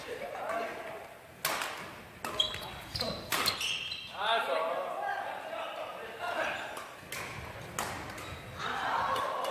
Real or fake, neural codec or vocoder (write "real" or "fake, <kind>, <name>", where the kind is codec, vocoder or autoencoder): real